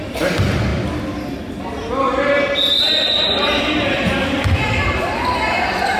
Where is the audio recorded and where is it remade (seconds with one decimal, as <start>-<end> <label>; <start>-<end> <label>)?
0.0-0.7 remade; 0.7-3.6 recorded; 3.6-6.0 remade